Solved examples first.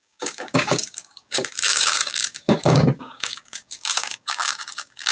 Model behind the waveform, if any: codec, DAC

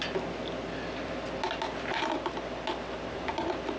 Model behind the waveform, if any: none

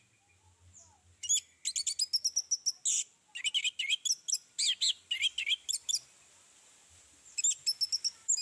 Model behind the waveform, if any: none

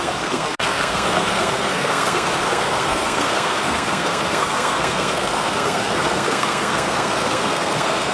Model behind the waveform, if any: codec, SNAC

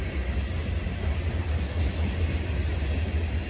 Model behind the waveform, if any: none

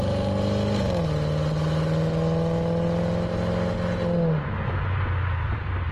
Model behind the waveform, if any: none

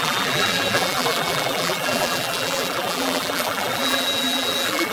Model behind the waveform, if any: vocoder, BigVGAN v2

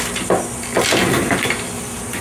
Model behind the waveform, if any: none